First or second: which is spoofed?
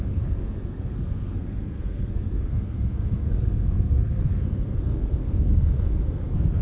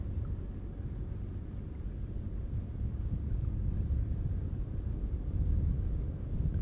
first